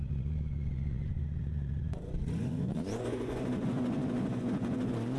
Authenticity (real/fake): fake